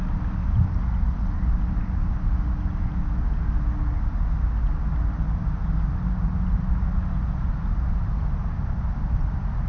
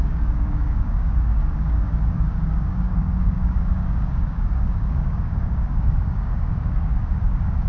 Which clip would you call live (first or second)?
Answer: first